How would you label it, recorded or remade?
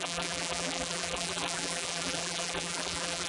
remade